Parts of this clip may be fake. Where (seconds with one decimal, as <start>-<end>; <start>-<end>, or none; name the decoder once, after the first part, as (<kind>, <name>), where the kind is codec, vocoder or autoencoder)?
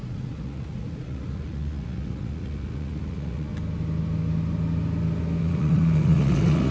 0.0-3.5 (vocoder, Vocos); 5.4-6.7